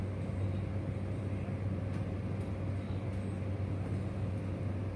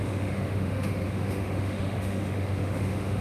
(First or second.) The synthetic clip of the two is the second